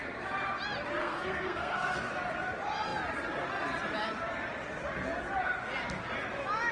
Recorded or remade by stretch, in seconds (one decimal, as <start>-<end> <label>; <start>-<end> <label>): 0.0-1.0 recorded; 1.0-2.1 remade; 2.1-6.7 recorded